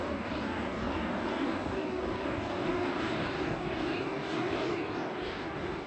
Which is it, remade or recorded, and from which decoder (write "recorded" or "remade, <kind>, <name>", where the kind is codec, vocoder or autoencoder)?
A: remade, codec, DAC